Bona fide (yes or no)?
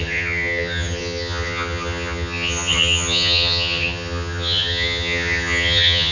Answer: no